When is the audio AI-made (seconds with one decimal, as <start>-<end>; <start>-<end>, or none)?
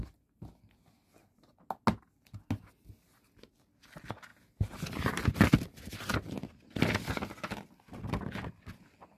none